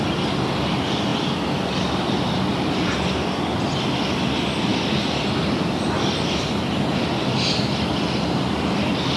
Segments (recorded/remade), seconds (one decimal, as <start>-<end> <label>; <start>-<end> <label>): 0.0-9.2 recorded